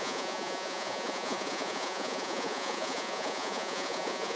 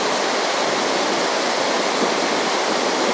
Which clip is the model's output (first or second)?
first